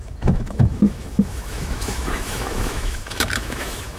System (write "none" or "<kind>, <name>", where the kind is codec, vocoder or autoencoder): autoencoder, DAC-VAE